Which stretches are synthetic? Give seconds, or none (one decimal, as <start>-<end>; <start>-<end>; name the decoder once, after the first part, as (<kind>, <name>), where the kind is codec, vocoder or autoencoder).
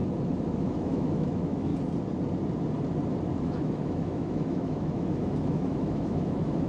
0.5-1.7 (autoencoder, DAC-VAE); 3.4-6.7